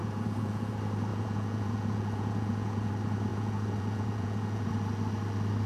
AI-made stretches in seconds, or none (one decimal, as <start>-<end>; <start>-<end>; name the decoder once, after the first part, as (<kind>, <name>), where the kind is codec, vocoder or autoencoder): 0.0-0.7 (vocoder, Vocos); 1.1-2.9; 3.3-4.7